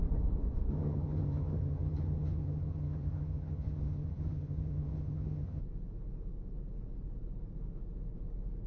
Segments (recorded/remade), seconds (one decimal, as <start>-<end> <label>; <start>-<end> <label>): 0.0-0.7 recorded; 0.7-5.6 remade; 5.6-8.7 recorded